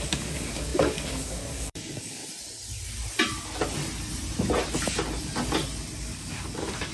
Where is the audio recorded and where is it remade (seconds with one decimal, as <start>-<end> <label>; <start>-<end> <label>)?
0.0-2.2 remade; 2.2-6.0 recorded; 6.0-6.9 remade